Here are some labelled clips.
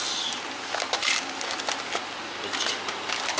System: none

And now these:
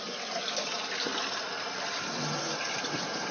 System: none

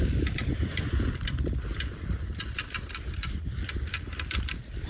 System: none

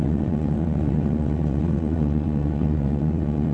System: vocoder, WaveNeXt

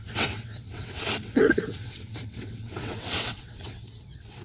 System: vocoder, WaveNeXt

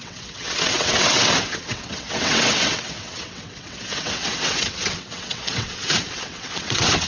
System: vocoder, WaveNeXt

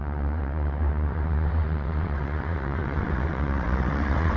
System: vocoder, WaveNeXt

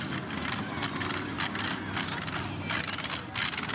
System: none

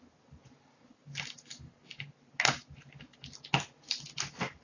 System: none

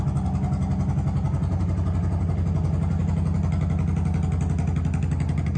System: none